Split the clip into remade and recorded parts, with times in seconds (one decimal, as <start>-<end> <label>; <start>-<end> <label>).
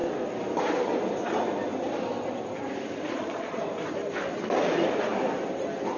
0.0-3.1 recorded; 3.1-3.6 remade; 3.6-6.0 recorded